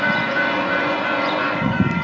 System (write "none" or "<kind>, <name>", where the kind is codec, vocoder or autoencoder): vocoder, Vocos